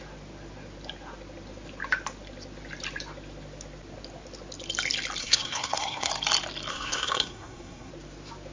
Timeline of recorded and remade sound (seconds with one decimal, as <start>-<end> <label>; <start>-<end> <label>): 0.0-5.2 recorded; 5.2-6.1 remade; 6.1-6.7 recorded; 6.7-7.9 remade; 7.9-8.5 recorded